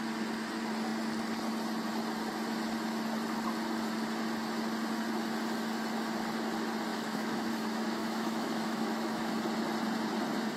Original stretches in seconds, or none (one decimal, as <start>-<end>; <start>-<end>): 0.0-6.9; 7.5-8.0; 9.3-10.6

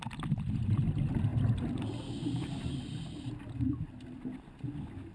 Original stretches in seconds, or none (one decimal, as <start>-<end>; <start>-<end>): 0.0-5.1

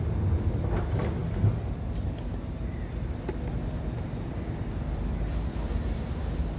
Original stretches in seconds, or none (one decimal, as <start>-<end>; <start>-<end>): 0.0-6.6

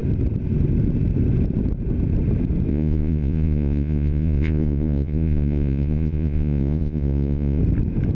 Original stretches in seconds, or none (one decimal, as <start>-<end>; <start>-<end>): 0.0-2.7; 7.6-8.1

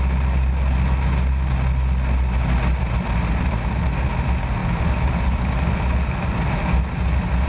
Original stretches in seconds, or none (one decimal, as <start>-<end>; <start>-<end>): 0.0-7.5

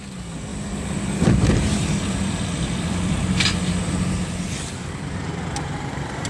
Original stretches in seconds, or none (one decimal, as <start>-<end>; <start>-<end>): 0.0-0.5; 4.3-6.3

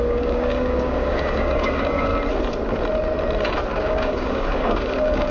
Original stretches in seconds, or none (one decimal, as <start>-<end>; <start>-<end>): 2.1-3.8

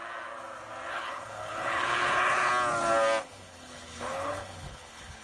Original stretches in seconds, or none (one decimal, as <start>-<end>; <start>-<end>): 0.0-0.9; 2.5-3.2